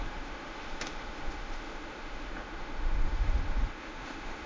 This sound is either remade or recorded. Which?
remade